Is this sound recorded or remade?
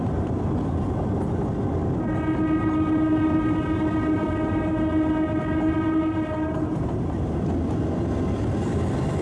recorded